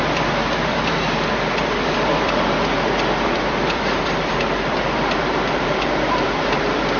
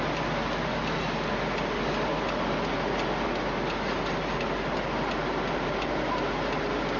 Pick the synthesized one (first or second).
first